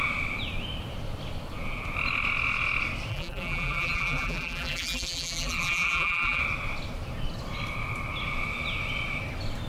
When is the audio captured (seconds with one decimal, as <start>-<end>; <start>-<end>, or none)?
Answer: 0.0-3.1; 6.4-9.7